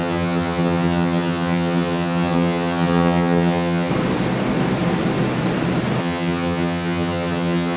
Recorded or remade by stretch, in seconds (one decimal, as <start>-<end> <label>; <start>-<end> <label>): 0.0-3.9 remade; 3.9-6.0 recorded; 6.0-7.8 remade